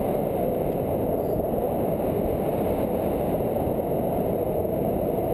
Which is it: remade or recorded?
recorded